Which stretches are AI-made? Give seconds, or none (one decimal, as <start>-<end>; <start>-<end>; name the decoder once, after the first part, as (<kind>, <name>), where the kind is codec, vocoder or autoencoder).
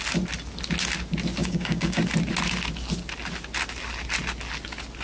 1.4-2.0 (codec, DAC)